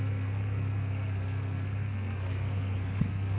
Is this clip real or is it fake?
fake